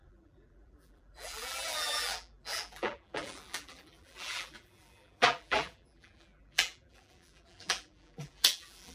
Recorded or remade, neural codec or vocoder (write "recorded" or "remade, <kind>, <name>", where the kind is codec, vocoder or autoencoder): remade, vocoder, BigVGAN v2